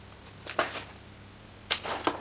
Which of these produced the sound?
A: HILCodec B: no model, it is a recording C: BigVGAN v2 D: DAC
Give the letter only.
B